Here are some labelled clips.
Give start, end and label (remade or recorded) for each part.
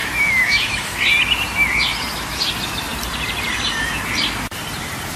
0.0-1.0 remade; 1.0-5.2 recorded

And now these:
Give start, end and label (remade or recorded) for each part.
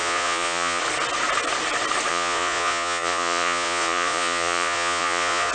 0.0-0.8 remade; 0.8-2.1 recorded; 2.1-5.5 remade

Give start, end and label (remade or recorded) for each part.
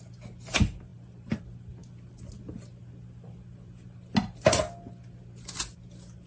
0.0-6.3 recorded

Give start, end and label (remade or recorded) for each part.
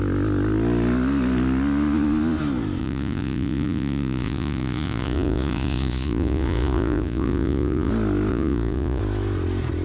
0.0-2.8 recorded; 2.8-7.9 remade; 7.9-8.3 recorded; 8.3-9.0 remade; 9.0-9.8 recorded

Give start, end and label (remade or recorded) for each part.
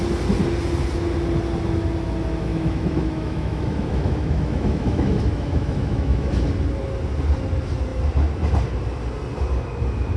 0.0-2.5 recorded; 2.5-6.3 remade; 6.3-10.2 recorded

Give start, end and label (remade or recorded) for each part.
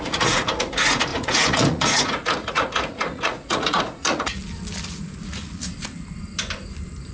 0.0-4.4 remade; 4.4-4.9 recorded; 4.9-5.6 remade; 5.6-7.1 recorded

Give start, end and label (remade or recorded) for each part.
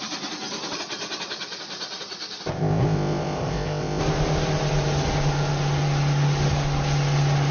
0.0-2.5 recorded; 2.5-4.0 remade; 4.0-7.5 recorded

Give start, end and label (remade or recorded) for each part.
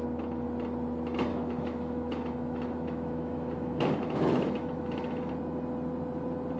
0.0-1.3 recorded; 1.3-5.3 remade; 5.3-6.6 recorded